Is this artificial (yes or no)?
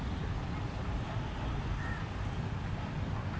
yes